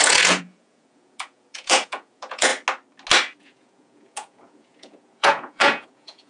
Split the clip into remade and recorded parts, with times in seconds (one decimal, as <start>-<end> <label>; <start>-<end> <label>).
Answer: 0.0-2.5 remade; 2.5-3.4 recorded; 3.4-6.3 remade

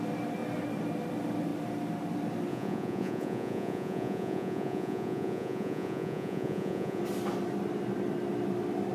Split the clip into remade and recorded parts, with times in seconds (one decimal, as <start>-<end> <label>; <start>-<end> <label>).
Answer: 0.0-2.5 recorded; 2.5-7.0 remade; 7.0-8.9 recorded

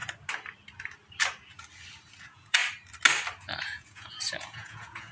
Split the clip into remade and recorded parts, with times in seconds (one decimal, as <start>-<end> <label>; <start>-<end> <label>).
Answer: 0.0-2.2 recorded; 2.2-2.6 remade; 2.6-3.6 recorded; 3.6-5.1 remade

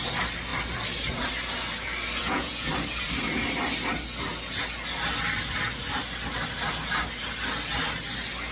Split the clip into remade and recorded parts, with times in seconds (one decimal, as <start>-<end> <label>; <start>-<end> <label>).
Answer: 0.0-2.2 recorded; 2.2-2.7 remade; 2.7-8.5 recorded